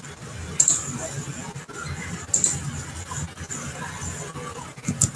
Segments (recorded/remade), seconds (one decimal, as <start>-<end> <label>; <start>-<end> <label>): 0.0-5.2 recorded